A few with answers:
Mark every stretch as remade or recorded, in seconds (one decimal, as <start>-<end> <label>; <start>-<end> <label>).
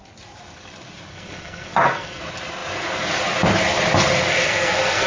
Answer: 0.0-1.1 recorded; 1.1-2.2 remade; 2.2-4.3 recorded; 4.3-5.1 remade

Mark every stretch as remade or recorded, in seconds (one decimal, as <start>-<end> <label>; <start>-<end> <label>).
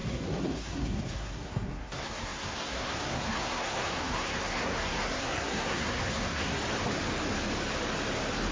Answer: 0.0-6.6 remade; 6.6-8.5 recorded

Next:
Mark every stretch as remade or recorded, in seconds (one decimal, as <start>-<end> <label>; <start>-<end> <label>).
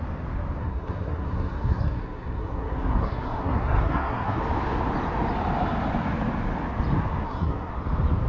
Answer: 0.0-0.6 recorded; 0.6-4.4 remade; 4.4-7.2 recorded; 7.2-7.7 remade; 7.7-8.3 recorded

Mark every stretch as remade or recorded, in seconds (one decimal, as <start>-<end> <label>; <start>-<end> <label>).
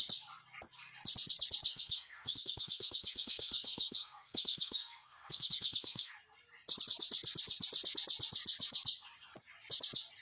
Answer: 0.0-1.7 recorded; 1.7-6.1 remade; 6.1-10.2 recorded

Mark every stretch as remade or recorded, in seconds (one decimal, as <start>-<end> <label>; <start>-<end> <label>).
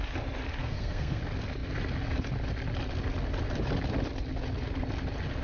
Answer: 0.0-0.6 recorded; 0.6-1.2 remade; 1.2-5.4 recorded